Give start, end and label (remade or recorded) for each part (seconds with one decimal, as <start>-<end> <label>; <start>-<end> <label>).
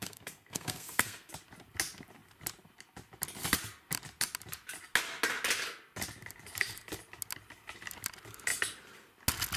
0.0-1.3 remade; 1.3-9.6 recorded